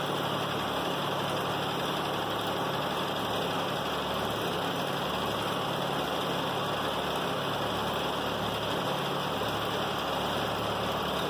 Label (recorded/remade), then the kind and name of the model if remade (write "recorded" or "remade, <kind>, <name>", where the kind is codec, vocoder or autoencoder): recorded